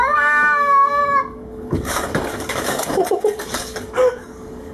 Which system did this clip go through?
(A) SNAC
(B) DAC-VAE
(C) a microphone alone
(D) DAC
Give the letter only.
D